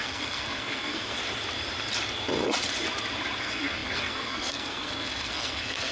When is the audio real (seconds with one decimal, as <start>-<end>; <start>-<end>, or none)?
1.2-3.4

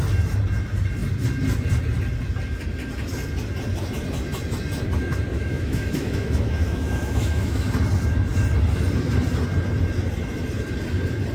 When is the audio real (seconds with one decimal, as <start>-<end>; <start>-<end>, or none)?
0.0-5.3; 7.7-11.3

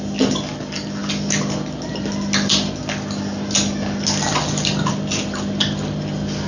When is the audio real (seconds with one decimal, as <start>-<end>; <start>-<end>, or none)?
0.0-6.5